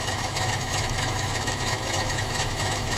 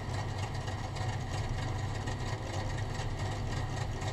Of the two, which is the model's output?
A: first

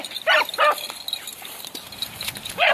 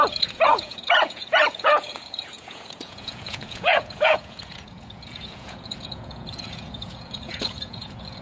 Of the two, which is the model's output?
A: second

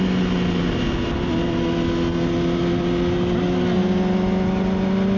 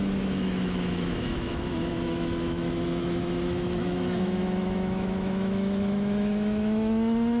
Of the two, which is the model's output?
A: second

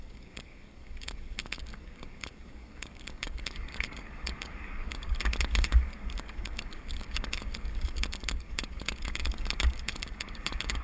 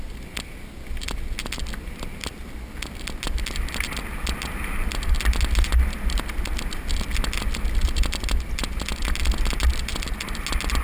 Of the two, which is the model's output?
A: first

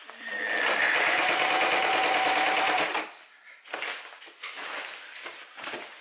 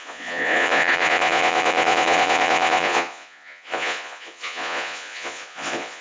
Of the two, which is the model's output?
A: second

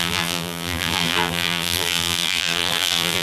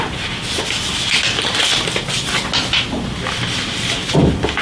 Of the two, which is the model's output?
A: first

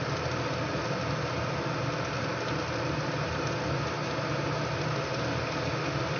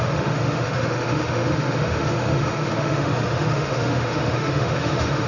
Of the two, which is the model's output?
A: second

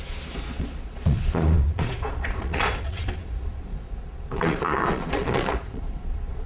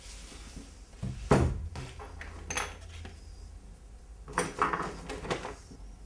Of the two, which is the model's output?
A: first